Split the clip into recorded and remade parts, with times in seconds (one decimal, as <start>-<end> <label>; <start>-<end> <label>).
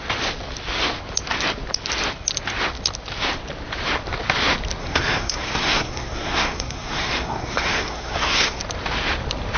0.0-4.8 recorded; 4.8-8.6 remade; 8.6-9.6 recorded